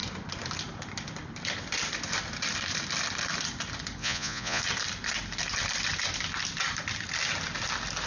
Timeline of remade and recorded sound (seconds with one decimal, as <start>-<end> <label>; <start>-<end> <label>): 0.0-4.0 recorded; 4.0-4.6 remade; 4.6-8.1 recorded